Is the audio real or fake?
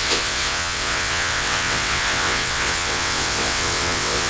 fake